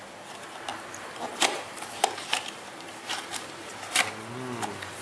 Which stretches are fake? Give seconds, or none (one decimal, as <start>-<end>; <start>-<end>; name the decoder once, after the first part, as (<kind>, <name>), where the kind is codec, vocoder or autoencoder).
0.7-3.7 (vocoder, BigVGAN v2)